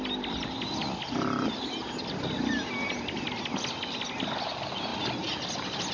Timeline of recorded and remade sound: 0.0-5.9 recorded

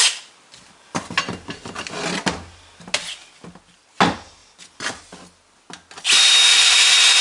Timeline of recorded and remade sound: 0.0-7.2 recorded

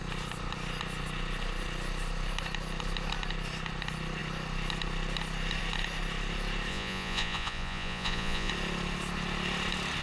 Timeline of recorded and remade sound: 0.0-6.7 recorded; 6.7-8.5 remade; 8.5-10.0 recorded

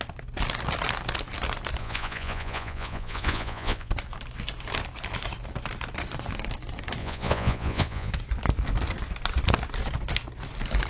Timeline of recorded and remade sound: 0.0-1.8 recorded; 1.8-3.9 remade; 3.9-7.0 recorded; 7.0-8.1 remade; 8.1-10.9 recorded

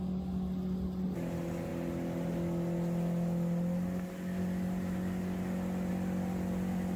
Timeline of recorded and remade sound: 0.0-7.0 recorded

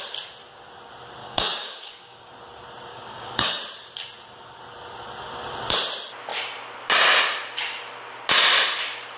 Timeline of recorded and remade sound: 0.0-1.2 recorded; 1.2-2.3 remade; 2.3-2.9 recorded; 2.9-3.6 remade; 3.6-9.2 recorded